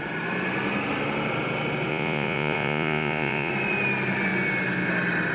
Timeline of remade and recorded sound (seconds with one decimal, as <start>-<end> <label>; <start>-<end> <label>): 0.0-1.9 recorded; 1.9-3.5 remade; 3.5-5.3 recorded